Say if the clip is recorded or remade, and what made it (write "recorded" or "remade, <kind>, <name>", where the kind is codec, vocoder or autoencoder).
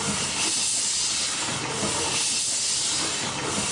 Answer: recorded